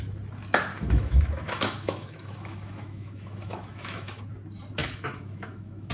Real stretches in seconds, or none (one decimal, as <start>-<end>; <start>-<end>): 0.0-0.7; 4.2-4.8